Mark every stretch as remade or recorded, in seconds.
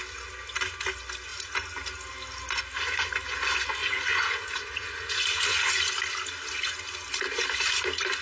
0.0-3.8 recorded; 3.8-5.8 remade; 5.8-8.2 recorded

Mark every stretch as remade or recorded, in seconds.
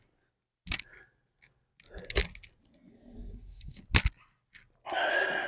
0.0-2.9 recorded; 2.9-3.8 remade; 3.8-5.5 recorded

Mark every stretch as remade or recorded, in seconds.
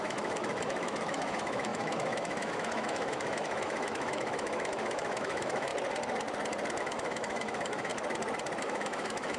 0.0-5.7 remade; 5.7-6.8 recorded; 6.8-7.9 remade; 7.9-8.6 recorded; 8.6-9.4 remade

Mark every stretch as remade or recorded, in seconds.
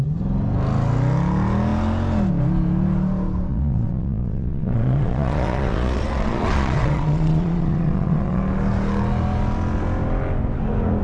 0.0-3.5 recorded; 3.5-8.4 remade; 8.4-11.0 recorded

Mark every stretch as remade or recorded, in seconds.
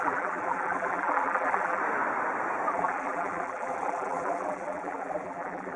0.0-1.8 remade; 1.8-2.7 recorded; 2.7-5.8 remade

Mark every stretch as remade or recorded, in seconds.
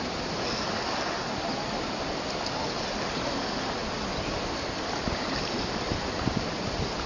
0.0-7.1 recorded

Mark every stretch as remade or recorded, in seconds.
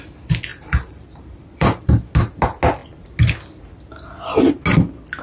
0.0-0.5 recorded; 0.5-1.9 remade; 1.9-5.2 recorded